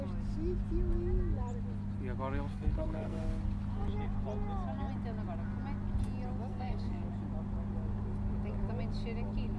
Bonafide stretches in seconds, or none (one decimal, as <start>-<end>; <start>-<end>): 0.0-2.5; 3.2-6.5; 7.0-9.6

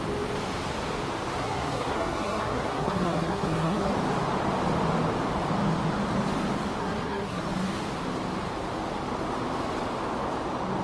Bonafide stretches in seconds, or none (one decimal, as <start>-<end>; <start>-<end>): 0.0-1.4; 3.9-6.8; 7.4-10.8

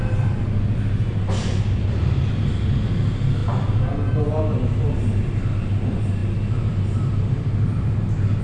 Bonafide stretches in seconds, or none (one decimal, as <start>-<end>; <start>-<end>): 0.0-8.4

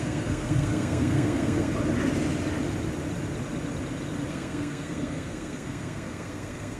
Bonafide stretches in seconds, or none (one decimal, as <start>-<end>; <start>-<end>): 1.7-4.3

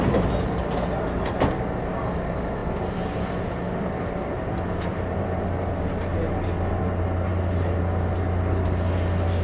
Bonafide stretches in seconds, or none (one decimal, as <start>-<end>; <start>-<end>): 0.0-9.4

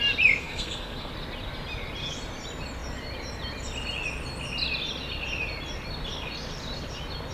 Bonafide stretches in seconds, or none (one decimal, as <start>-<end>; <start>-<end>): 0.0-0.4; 1.1-7.3

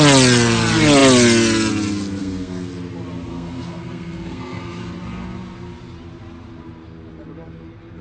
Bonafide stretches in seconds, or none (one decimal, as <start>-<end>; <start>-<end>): 0.0-2.2; 2.7-3.3; 4.8-8.0